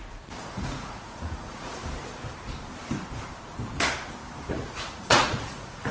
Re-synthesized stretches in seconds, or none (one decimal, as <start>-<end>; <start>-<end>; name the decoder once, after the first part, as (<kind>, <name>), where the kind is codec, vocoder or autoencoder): 0.5-1.8 (vocoder, Vocos); 4.5-5.9